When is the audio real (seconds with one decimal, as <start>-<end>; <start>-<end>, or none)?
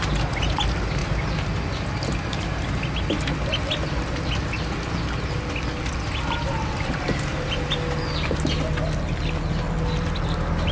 0.0-10.7